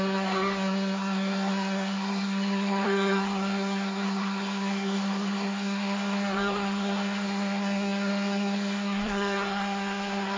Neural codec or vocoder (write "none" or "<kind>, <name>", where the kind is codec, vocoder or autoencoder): codec, SNAC